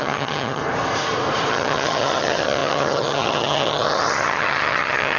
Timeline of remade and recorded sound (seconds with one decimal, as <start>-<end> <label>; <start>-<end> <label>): 0.0-0.6 remade; 0.6-1.5 recorded; 1.5-5.2 remade